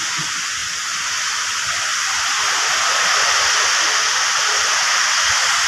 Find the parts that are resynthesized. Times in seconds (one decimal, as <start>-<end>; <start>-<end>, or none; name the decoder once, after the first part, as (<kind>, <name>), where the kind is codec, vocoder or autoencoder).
none